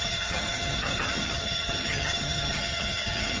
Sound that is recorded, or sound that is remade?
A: remade